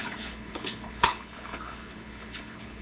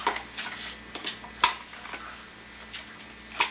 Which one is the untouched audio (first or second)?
second